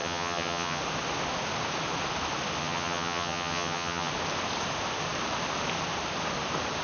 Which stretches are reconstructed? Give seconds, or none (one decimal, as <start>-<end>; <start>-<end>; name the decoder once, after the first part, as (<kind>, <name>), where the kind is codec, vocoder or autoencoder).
0.0-0.8 (vocoder, HiFi-GAN); 2.6-4.1